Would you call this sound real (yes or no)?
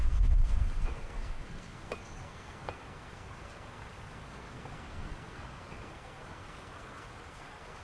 no